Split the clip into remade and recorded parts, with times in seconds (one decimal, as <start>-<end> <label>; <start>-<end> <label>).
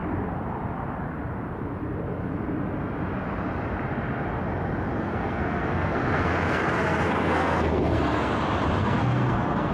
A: 0.0-5.0 recorded; 5.0-8.3 remade; 8.3-8.8 recorded; 8.8-9.7 remade